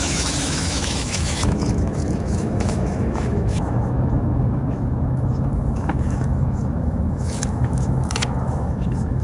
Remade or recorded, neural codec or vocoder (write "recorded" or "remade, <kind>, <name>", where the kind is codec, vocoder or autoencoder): remade, autoencoder, DAC-VAE